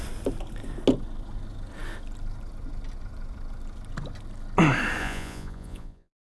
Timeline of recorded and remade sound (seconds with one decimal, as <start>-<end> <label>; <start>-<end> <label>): 0.0-5.0 recorded; 5.0-6.2 remade